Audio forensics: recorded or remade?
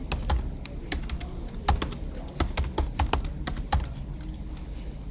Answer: recorded